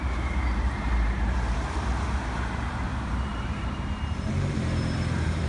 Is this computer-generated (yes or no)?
yes